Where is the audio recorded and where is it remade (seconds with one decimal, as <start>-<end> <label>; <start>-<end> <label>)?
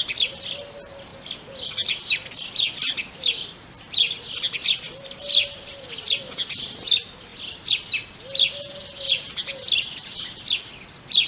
0.0-11.3 recorded